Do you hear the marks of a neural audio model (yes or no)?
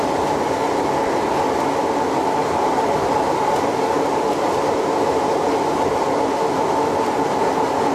no